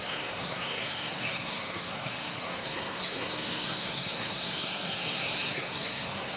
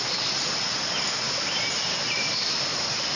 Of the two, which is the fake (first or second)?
first